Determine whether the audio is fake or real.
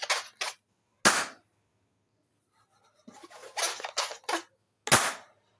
real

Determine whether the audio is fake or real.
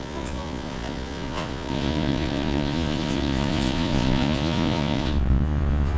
fake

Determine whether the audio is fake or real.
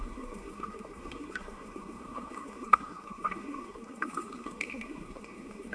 fake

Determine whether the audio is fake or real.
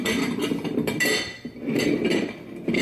real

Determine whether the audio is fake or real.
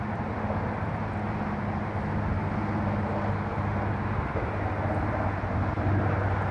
real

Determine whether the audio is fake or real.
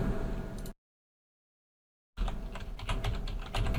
real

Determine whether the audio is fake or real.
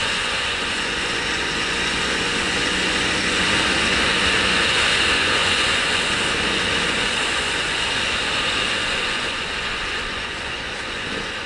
fake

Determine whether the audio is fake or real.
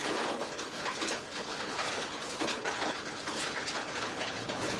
fake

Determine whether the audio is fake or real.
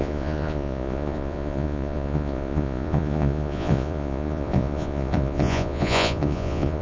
fake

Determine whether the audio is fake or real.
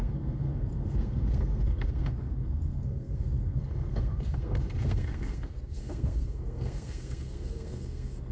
fake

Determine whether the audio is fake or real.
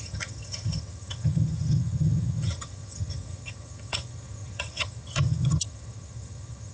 fake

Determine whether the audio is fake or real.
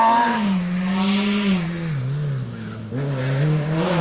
real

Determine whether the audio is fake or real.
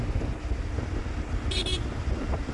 real